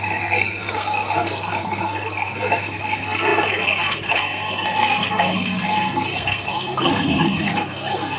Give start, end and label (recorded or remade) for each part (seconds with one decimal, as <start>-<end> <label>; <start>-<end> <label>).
0.0-8.2 remade

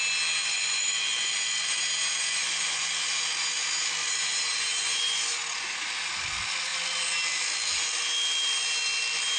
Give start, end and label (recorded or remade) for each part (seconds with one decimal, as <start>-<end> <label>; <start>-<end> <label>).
0.0-0.4 recorded; 0.4-1.8 remade; 1.8-2.2 recorded; 2.2-2.9 remade; 2.9-4.0 recorded; 4.0-5.7 remade; 5.7-9.4 recorded

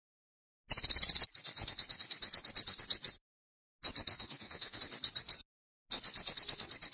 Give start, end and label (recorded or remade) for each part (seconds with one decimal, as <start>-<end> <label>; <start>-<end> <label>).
0.0-4.1 recorded; 4.1-4.8 remade; 4.8-6.9 recorded

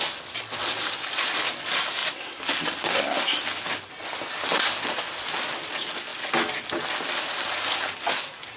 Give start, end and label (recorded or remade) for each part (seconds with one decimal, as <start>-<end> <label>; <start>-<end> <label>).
0.0-8.6 recorded

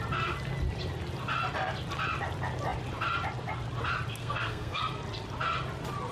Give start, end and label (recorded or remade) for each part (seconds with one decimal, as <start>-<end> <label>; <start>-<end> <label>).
0.0-4.2 recorded; 4.2-4.8 remade; 4.8-6.1 recorded

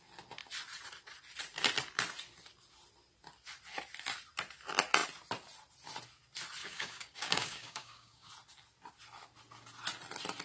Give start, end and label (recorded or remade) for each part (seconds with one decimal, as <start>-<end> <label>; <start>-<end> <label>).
0.0-6.6 recorded; 6.6-8.3 remade; 8.3-10.4 recorded

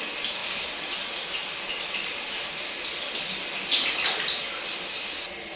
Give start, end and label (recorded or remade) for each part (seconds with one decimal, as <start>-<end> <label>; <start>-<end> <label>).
0.0-5.6 recorded